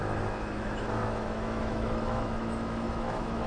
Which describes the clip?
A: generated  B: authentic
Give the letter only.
A